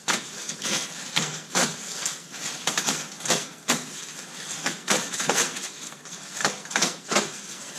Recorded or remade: remade